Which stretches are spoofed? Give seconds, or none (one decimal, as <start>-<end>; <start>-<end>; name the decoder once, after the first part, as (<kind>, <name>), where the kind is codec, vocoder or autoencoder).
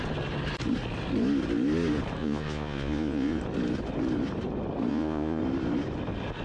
2.2-3.4 (vocoder, Vocos); 4.9-5.4